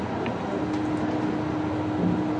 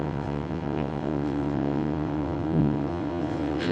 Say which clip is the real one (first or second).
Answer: first